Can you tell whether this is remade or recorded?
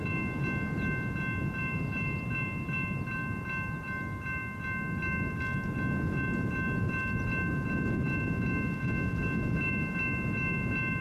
recorded